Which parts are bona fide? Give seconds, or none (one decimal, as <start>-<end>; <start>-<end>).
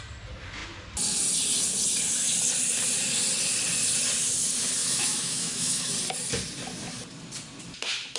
0.0-4.8; 5.9-8.2